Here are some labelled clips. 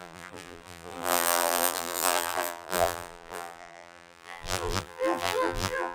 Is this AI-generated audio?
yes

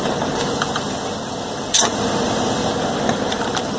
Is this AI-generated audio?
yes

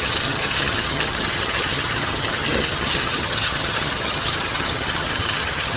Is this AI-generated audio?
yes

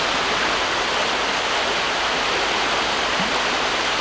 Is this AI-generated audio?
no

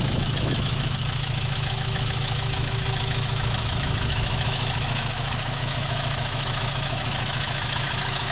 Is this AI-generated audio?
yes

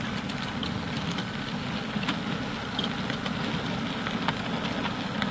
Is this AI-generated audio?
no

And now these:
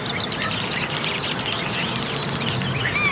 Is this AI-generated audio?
no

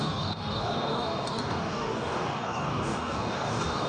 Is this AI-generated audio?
yes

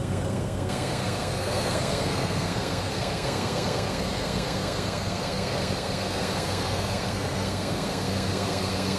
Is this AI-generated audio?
yes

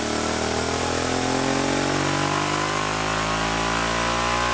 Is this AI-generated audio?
no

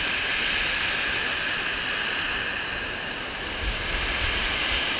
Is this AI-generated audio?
no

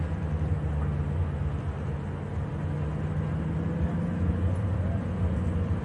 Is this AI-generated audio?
no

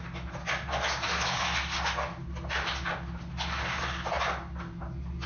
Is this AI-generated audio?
no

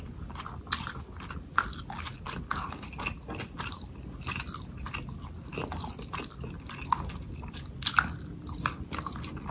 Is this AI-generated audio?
no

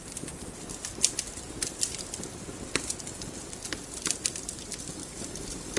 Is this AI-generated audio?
no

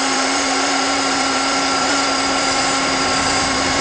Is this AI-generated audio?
yes